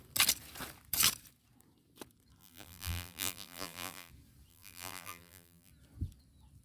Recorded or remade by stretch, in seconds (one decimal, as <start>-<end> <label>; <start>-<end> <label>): 0.0-2.4 recorded; 2.4-4.1 remade; 4.1-4.5 recorded; 4.5-5.7 remade; 5.7-6.6 recorded